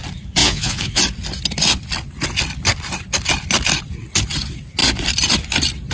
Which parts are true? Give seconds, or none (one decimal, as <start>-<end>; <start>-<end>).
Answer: 0.0-0.4; 1.0-5.9